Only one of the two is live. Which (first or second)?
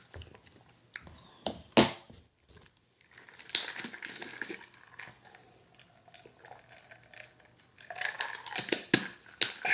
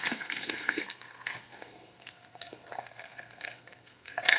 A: first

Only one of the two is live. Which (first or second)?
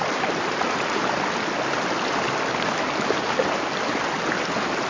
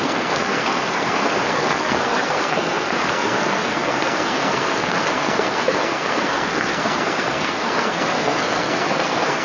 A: first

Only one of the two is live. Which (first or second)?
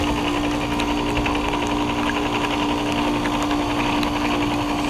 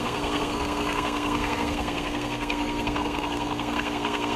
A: first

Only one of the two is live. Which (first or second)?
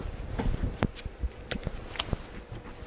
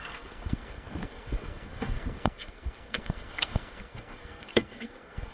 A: first